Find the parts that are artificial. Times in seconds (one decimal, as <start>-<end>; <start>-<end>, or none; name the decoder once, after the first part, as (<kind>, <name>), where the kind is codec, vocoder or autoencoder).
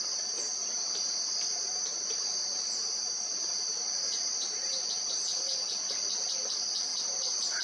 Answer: 0.6-5.2 (vocoder, BigVGAN v2); 6.9-7.6